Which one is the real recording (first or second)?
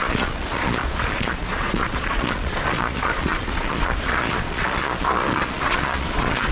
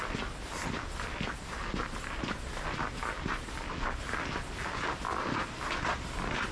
second